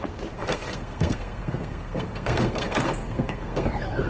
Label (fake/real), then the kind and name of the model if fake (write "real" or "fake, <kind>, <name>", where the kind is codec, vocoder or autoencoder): fake, codec, SNAC